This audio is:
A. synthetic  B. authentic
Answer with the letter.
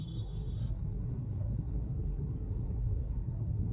A